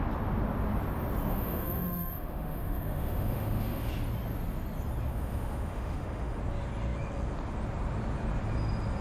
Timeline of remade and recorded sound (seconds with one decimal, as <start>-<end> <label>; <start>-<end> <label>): 0.0-1.3 recorded; 1.3-3.9 remade; 3.9-5.1 recorded; 5.1-6.4 remade; 6.4-9.0 recorded